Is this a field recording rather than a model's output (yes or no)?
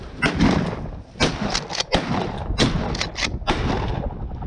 yes